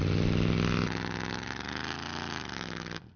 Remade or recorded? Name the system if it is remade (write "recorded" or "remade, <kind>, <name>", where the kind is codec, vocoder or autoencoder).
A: recorded